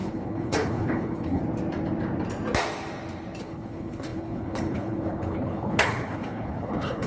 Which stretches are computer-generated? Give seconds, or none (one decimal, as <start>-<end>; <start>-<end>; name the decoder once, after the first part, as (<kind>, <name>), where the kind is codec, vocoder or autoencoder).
0.0-1.4 (codec, HILCodec); 3.4-7.1